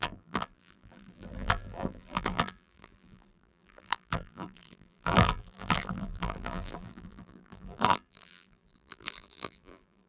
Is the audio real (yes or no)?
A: no